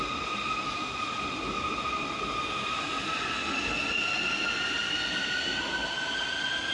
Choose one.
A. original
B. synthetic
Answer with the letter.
A